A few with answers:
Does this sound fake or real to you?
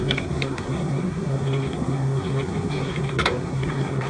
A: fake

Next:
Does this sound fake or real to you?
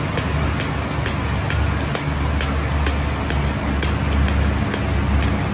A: real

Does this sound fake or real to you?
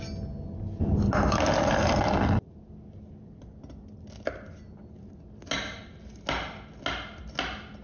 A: real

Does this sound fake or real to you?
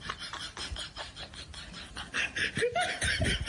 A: real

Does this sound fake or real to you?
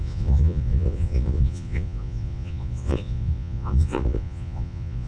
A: fake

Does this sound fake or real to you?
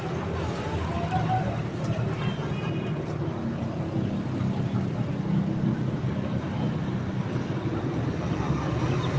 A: real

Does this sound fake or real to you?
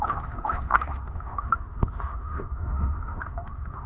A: fake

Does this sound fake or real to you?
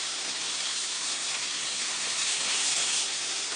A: fake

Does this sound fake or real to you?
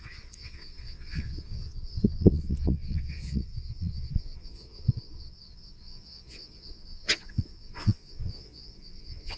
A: fake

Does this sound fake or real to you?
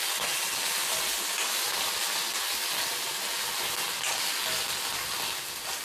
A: real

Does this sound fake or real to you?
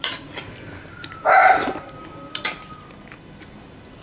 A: real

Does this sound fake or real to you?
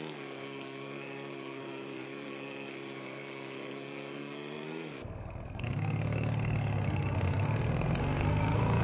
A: fake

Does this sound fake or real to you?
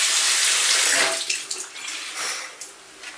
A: real